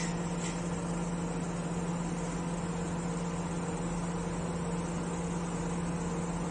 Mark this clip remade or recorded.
recorded